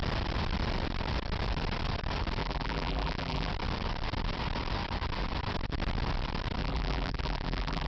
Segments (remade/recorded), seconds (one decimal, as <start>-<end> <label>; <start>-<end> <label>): 0.0-2.4 recorded; 2.4-3.5 remade; 3.5-6.6 recorded; 6.6-7.9 remade